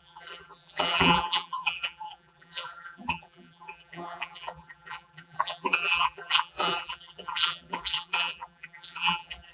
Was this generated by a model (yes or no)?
yes